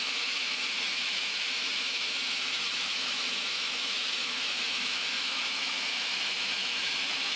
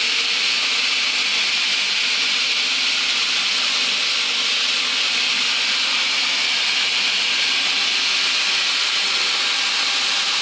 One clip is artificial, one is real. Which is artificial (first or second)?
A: first